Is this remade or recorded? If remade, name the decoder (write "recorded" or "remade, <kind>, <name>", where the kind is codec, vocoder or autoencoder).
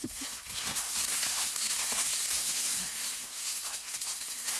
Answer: remade, codec, SNAC